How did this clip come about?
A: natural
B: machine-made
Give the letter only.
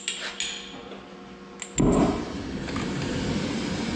A